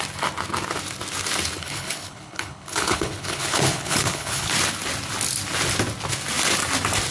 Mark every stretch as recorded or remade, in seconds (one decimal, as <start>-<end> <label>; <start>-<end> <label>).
0.0-1.6 recorded; 1.6-4.5 remade; 4.5-7.1 recorded